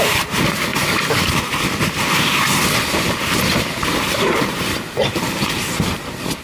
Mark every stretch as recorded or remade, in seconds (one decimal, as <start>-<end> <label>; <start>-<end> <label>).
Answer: 0.0-6.4 recorded